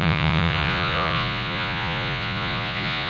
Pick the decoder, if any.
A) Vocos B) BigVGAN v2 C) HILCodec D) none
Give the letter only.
A